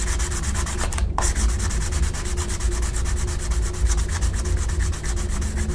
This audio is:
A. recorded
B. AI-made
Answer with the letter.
A